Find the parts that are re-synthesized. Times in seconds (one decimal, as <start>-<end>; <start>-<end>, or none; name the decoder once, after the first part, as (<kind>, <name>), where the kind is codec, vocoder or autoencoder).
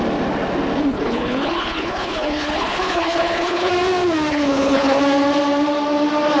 0.9-3.7 (codec, HILCodec); 4.3-5.0